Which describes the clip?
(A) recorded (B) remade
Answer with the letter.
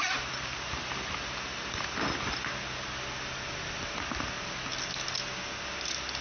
A